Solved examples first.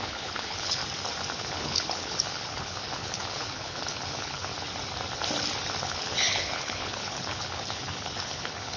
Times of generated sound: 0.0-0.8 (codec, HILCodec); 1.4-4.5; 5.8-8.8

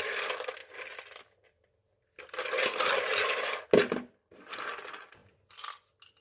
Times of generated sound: none